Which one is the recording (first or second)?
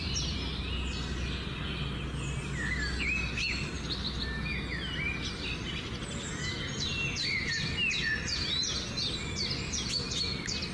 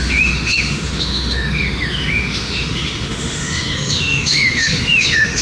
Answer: first